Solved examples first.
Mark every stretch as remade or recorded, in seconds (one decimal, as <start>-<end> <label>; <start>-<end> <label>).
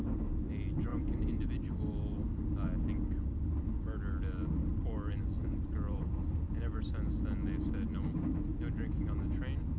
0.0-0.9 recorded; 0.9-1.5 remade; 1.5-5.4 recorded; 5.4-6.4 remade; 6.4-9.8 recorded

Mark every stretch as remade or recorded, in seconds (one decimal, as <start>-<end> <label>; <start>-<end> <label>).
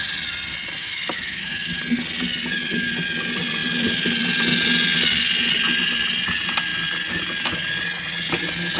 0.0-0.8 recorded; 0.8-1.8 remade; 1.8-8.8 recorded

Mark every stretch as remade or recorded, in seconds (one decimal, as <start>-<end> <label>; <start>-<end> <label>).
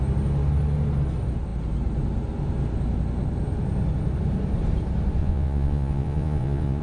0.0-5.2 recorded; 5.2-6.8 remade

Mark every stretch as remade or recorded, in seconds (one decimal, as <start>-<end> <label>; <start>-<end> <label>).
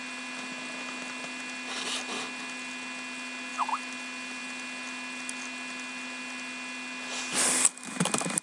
0.0-8.4 recorded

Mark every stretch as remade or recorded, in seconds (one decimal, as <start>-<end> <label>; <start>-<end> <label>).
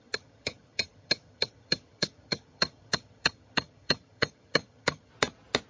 0.0-5.1 remade; 5.1-5.7 recorded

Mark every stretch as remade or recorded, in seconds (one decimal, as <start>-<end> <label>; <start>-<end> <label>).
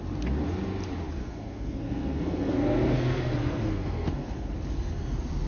0.0-1.2 recorded; 1.2-4.5 remade; 4.5-5.5 recorded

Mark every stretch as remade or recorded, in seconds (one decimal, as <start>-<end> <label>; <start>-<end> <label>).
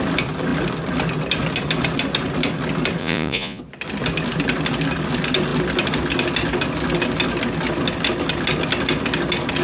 0.0-3.0 recorded; 3.0-3.6 remade; 3.6-9.6 recorded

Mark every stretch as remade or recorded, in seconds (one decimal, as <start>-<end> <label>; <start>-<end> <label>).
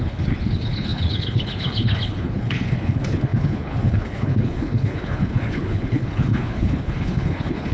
0.0-7.7 remade